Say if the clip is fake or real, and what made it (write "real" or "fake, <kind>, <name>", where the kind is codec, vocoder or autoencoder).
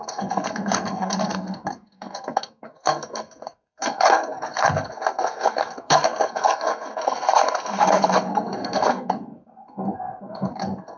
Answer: fake, codec, SNAC